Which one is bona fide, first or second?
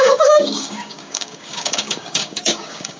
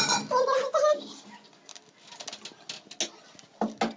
second